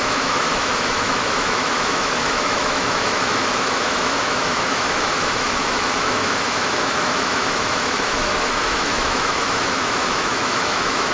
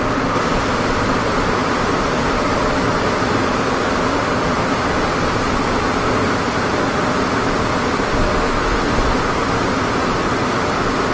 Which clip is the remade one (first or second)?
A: first